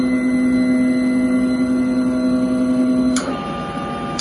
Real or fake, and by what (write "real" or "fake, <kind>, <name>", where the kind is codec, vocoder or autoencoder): real